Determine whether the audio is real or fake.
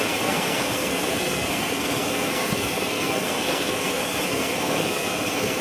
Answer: fake